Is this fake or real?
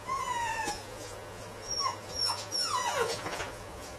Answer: fake